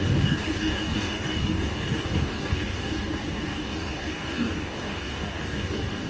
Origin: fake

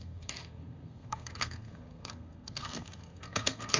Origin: fake